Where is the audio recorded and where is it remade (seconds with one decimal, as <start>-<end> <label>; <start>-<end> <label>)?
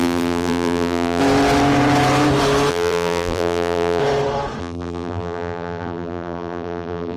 0.0-1.2 remade; 1.2-2.7 recorded; 2.7-4.0 remade; 4.0-4.6 recorded; 4.6-7.2 remade